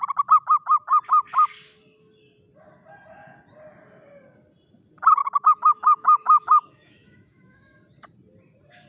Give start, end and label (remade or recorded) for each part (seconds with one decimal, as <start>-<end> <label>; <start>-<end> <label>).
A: 0.0-5.2 recorded; 5.2-7.8 remade; 7.8-8.9 recorded